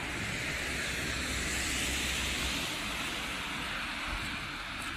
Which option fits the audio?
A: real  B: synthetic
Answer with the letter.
A